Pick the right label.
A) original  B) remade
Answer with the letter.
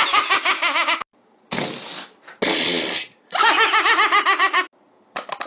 A